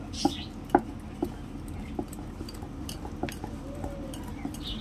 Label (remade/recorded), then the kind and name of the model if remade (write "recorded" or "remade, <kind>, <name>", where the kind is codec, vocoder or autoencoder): recorded